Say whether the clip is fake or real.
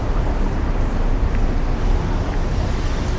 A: real